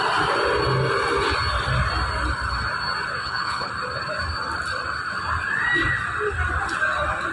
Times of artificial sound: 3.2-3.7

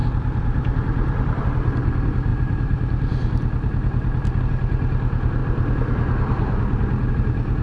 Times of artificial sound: 0.0-1.4; 2.3-4.4

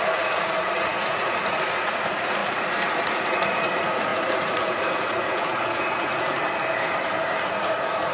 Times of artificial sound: 0.0-6.4; 7.4-8.1

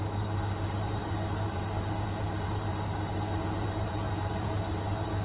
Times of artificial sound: 0.0-5.2